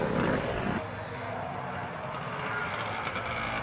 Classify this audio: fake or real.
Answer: real